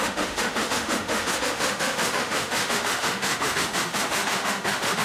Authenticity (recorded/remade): remade